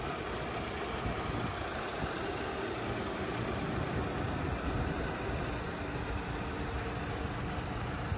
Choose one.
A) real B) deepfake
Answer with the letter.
A